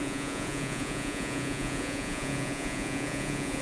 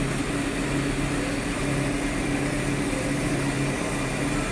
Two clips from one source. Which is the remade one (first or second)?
first